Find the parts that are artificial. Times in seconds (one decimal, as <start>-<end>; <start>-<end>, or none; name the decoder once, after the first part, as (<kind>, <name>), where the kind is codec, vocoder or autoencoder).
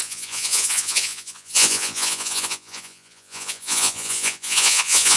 0.0-5.2 (vocoder, Vocos)